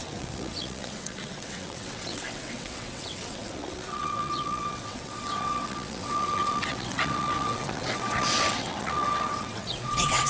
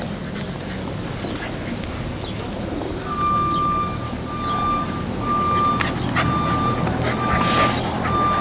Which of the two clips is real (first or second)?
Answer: second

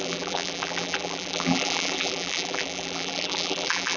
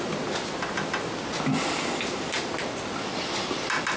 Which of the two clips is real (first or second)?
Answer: second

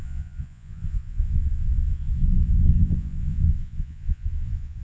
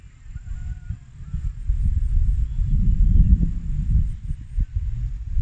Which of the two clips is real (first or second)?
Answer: second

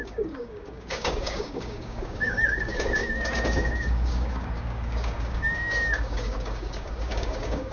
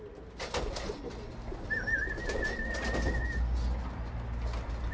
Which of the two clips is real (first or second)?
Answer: second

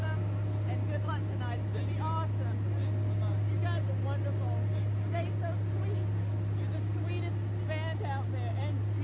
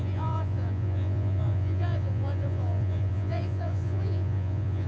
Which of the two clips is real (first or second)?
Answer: first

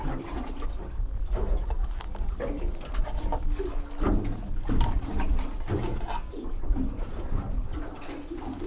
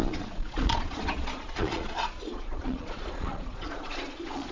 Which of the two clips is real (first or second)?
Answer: first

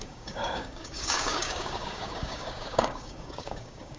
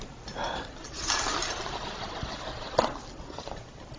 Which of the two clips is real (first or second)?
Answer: second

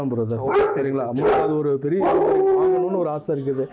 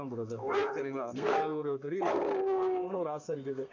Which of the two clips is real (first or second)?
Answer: first